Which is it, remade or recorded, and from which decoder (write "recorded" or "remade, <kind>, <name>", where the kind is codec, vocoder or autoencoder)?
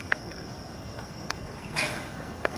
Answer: remade, codec, SNAC